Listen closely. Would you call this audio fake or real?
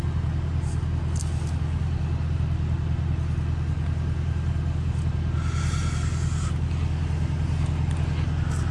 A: real